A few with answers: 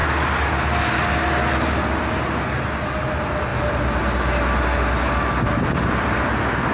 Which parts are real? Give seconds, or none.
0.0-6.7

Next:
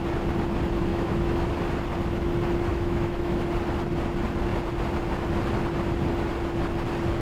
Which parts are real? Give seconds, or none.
0.0-0.9; 1.5-2.7; 3.4-7.2